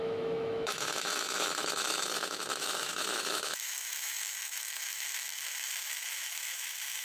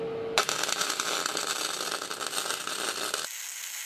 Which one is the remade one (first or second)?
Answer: first